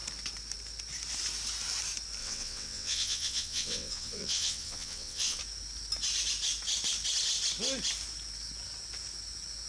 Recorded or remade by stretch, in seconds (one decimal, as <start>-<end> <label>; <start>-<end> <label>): 0.0-2.2 recorded; 2.2-5.4 remade; 5.4-9.7 recorded